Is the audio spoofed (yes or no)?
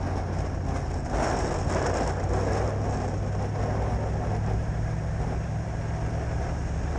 no